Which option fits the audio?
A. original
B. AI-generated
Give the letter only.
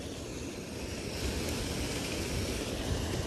A